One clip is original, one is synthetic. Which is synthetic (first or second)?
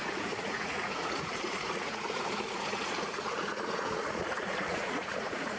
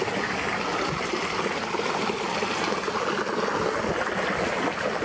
first